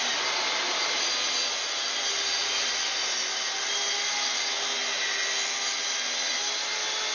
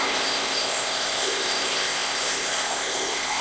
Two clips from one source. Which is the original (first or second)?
first